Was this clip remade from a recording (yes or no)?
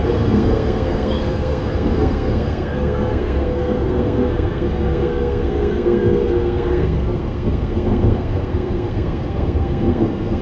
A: yes